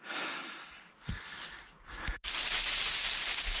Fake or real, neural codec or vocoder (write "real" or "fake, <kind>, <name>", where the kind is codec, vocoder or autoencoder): real